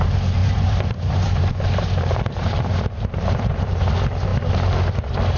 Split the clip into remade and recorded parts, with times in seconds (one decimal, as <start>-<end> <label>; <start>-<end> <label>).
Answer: 0.0-0.4 recorded; 0.4-3.6 remade; 3.6-5.4 recorded